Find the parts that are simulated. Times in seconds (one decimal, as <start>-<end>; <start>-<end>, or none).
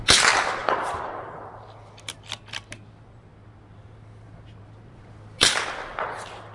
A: 0.6-1.5